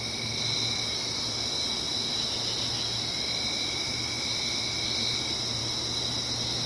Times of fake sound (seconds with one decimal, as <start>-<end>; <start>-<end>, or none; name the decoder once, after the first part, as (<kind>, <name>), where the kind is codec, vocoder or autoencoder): none